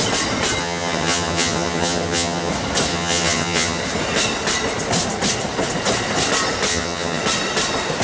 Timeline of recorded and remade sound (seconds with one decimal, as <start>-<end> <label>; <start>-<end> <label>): 0.0-0.6 recorded; 0.6-2.5 remade; 2.5-2.9 recorded; 2.9-3.8 remade; 3.8-6.7 recorded; 6.7-7.2 remade; 7.2-8.0 recorded